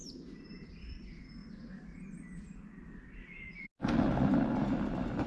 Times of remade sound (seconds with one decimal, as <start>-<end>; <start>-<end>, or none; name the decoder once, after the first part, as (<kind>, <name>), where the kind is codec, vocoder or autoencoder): 0.0-0.7 (vocoder, BigVGAN v2)